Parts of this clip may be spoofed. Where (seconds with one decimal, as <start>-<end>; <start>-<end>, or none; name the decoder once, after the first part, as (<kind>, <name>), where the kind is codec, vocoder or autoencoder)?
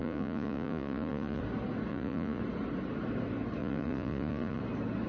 0.0-1.4 (vocoder, Vocos); 1.9-2.4; 3.6-4.6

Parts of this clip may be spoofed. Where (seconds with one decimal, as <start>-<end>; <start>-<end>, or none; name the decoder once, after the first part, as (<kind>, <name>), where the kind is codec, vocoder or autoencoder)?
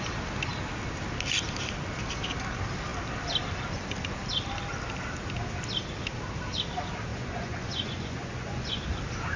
7.1-8.8 (vocoder, Vocos)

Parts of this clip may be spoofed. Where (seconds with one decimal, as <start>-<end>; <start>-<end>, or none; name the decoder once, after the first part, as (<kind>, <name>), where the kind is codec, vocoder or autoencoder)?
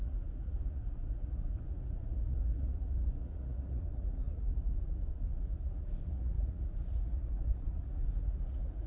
0.0-8.9 (vocoder, Vocos)